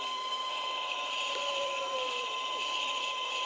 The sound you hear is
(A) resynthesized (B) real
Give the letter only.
A